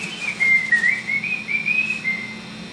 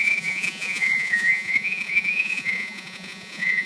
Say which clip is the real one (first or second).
first